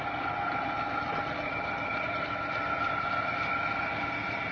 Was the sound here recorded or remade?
recorded